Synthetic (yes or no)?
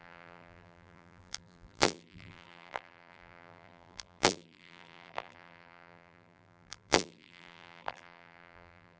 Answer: yes